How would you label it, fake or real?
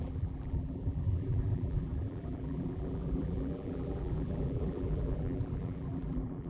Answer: fake